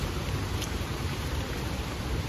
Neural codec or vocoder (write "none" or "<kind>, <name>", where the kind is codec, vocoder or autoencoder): vocoder, BigVGAN v2